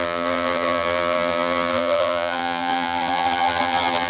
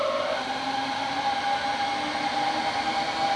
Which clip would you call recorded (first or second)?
second